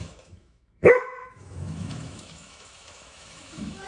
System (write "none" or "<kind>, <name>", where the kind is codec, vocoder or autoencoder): autoencoder, DAC-VAE